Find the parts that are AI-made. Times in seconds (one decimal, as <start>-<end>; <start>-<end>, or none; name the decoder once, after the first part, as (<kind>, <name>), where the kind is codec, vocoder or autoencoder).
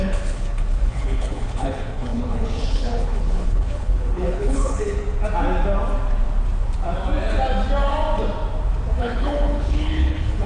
0.0-5.0 (codec, HILCodec); 9.0-10.5